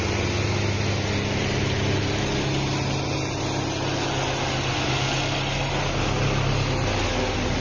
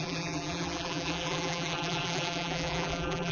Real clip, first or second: first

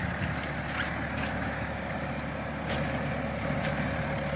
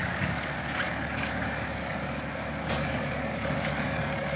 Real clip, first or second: first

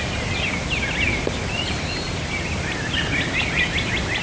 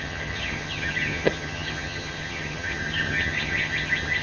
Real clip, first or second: first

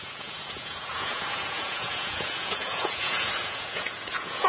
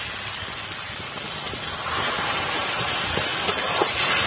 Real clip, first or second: second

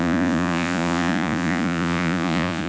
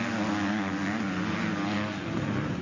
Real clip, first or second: second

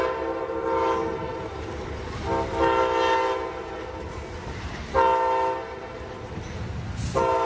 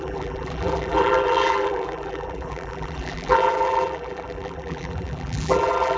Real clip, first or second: first